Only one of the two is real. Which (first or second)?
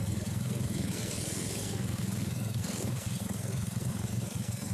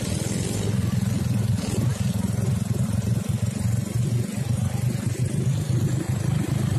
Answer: second